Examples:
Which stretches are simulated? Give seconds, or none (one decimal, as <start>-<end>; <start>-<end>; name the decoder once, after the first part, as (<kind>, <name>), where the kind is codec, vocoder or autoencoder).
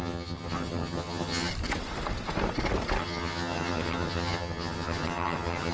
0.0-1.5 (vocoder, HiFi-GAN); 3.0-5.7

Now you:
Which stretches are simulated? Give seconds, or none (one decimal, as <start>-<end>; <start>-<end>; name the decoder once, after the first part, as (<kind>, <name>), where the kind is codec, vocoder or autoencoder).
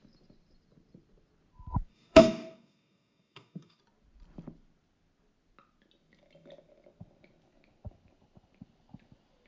1.9-3.8 (codec, DAC)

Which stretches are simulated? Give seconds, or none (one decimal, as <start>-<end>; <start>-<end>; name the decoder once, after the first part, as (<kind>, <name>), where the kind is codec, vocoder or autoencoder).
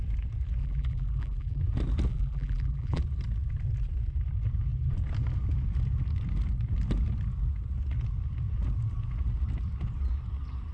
0.6-1.6 (vocoder, BigVGAN v2); 2.1-3.0